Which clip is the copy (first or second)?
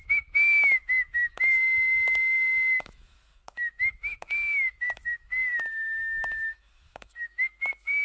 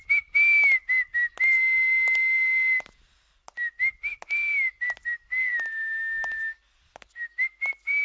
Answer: first